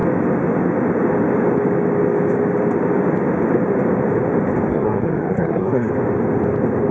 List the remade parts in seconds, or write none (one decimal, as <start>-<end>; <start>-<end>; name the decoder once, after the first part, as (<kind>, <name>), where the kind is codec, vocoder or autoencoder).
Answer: 4.7-5.9 (codec, SNAC)